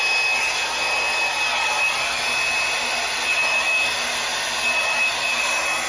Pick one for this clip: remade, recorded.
recorded